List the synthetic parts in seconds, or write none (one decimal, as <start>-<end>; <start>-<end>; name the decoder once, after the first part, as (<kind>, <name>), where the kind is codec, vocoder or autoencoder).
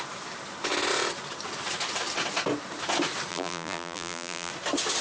3.3-4.5 (vocoder, BigVGAN v2)